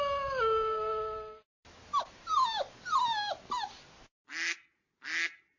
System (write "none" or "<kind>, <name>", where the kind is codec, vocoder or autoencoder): none